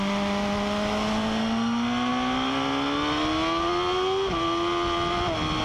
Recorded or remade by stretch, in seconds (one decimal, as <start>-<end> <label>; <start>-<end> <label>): 0.0-5.6 recorded